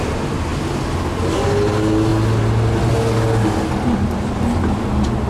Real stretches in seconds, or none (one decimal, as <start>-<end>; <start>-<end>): 0.0-5.3